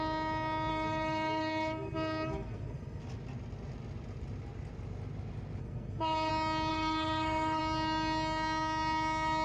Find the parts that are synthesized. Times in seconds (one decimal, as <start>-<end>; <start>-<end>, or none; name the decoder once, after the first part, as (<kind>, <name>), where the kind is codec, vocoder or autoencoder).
0.7-3.0 (codec, SNAC); 5.6-6.3; 6.7-7.6